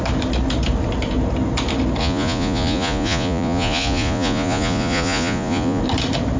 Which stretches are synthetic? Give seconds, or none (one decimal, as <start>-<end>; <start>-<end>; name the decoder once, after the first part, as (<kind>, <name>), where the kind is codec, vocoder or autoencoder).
2.0-5.8 (vocoder, Vocos)